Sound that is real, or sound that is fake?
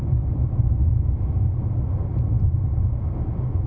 real